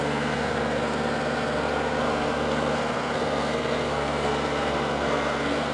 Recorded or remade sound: remade